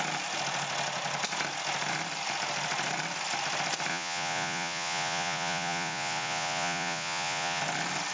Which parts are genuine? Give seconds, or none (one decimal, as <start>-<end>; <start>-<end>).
0.0-3.9; 7.6-8.1